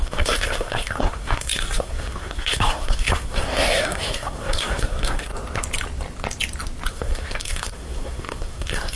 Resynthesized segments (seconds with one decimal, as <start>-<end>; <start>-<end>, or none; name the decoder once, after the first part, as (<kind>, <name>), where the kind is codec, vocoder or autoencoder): 0.0-5.3 (codec, SNAC); 6.9-9.0